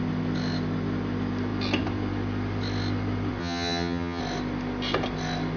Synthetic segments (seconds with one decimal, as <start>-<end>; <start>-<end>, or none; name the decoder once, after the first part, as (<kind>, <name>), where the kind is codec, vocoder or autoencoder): 3.4-4.2 (vocoder, HiFi-GAN)